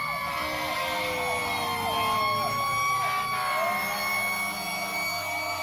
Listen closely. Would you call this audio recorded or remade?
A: recorded